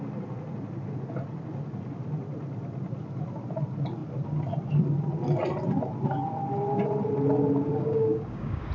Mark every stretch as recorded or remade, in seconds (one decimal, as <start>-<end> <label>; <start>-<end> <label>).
0.0-7.7 recorded; 7.7-8.7 remade